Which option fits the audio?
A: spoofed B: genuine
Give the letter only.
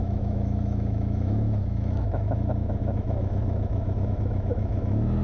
A